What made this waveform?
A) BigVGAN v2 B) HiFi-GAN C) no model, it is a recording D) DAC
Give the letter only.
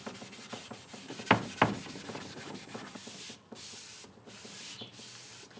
C